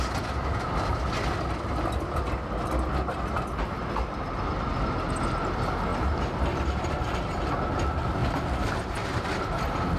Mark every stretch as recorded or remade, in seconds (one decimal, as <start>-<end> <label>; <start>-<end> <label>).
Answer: 0.0-8.2 recorded; 8.2-9.4 remade; 9.4-10.0 recorded